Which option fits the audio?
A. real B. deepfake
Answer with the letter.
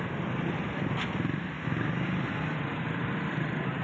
A